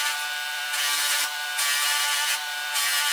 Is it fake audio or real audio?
fake